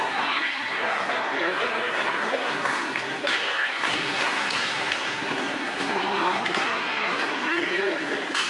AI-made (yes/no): yes